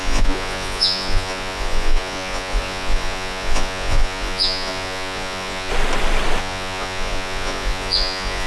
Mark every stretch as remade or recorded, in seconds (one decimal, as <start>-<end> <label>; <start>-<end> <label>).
0.0-5.7 remade; 5.7-6.4 recorded; 6.4-8.5 remade